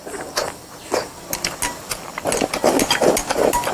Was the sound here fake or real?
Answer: real